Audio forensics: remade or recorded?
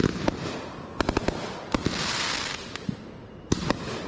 recorded